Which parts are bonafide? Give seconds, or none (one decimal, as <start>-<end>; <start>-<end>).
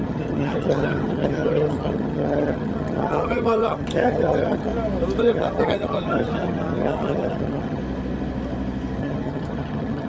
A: 4.7-5.2; 7.8-9.0